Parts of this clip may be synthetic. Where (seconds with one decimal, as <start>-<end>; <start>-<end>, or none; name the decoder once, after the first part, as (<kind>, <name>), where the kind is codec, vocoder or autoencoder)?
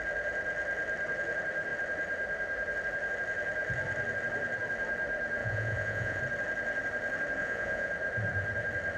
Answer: 5.4-6.2 (vocoder, Vocos); 7.4-7.9